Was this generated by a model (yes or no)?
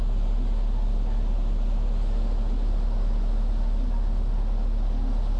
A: no